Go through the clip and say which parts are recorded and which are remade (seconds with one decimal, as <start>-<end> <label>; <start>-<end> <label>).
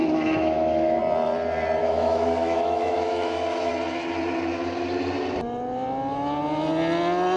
0.0-1.0 remade; 1.0-1.8 recorded; 1.8-3.7 remade; 3.7-7.4 recorded